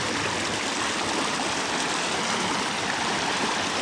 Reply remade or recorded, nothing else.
recorded